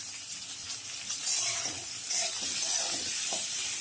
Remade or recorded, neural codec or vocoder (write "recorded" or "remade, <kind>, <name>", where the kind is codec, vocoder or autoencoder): recorded